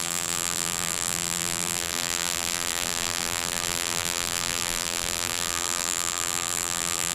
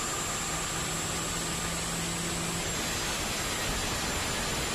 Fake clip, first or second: first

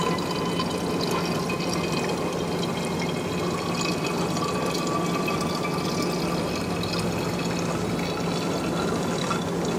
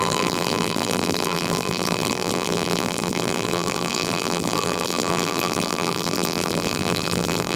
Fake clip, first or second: second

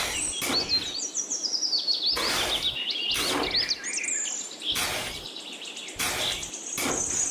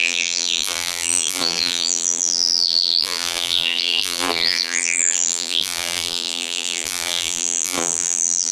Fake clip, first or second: second